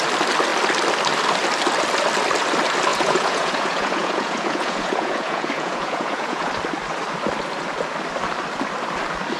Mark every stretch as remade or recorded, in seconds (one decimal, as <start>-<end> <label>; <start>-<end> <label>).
0.0-2.9 recorded; 2.9-6.5 remade; 6.5-9.4 recorded

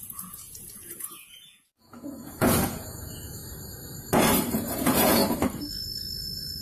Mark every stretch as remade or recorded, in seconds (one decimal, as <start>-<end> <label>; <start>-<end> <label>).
0.0-3.4 remade; 3.4-4.5 recorded; 4.5-5.2 remade; 5.2-6.6 recorded

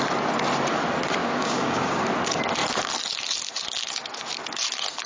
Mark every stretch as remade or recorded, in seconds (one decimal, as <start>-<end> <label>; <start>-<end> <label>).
0.0-1.2 recorded; 1.2-2.0 remade; 2.0-5.1 recorded

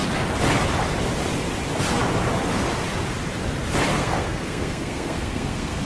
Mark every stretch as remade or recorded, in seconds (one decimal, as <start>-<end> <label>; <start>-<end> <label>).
0.0-3.9 recorded; 3.9-5.9 remade

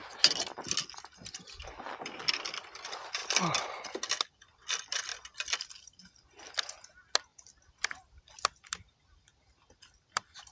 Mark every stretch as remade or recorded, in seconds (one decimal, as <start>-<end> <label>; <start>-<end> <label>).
0.0-5.1 recorded; 5.1-5.7 remade; 5.7-7.3 recorded; 7.3-8.3 remade; 8.3-10.5 recorded

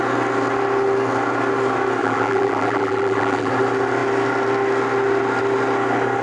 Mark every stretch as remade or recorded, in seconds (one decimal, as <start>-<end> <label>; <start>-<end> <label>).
0.0-2.0 recorded; 2.0-3.5 remade; 3.5-6.2 recorded

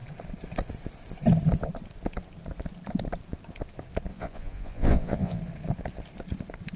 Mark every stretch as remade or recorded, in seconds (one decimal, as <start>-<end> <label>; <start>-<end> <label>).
0.0-4.1 recorded; 4.1-5.4 remade; 5.4-6.8 recorded